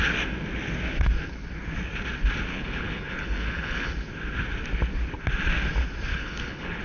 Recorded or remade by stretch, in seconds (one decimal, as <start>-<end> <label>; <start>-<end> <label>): 0.0-2.5 recorded; 2.5-3.9 remade; 3.9-6.1 recorded; 6.1-6.8 remade